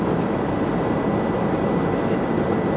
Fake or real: real